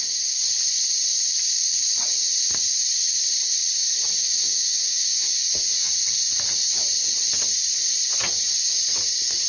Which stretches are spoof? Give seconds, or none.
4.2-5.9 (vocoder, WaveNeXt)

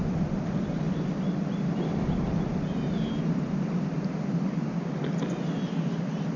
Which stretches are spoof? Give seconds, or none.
0.0-0.8 (vocoder, BigVGAN v2)

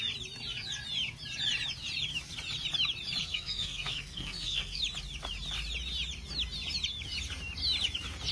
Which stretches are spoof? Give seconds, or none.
3.2-4.8 (codec, SNAC)

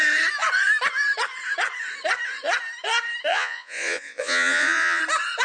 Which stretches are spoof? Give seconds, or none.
3.3-5.0 (vocoder, Vocos)

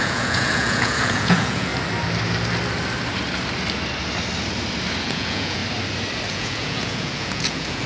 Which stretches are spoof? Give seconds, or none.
0.0-1.7 (vocoder, Vocos); 5.0-5.6; 6.3-7.9

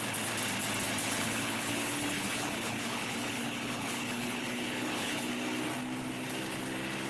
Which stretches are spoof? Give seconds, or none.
1.0-5.3 (codec, HILCodec)

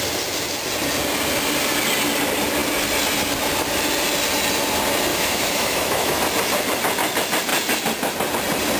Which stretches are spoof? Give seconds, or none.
5.1-6.2 (autoencoder, DAC-VAE)

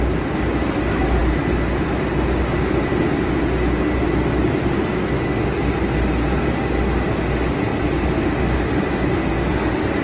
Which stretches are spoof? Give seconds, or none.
none